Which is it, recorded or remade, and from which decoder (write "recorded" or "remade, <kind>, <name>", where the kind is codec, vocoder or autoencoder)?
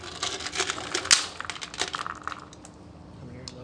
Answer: recorded